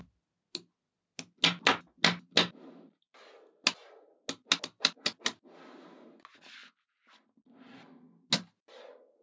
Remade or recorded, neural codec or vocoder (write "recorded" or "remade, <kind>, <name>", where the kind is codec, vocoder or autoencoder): recorded